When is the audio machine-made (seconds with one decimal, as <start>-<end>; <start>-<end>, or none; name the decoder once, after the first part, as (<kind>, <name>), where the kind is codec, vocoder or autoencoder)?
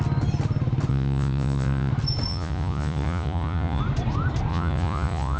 0.9-1.9 (vocoder, Vocos); 2.3-3.8; 4.5-5.4